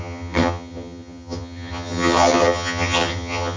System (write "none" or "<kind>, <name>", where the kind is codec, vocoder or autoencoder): vocoder, HiFi-GAN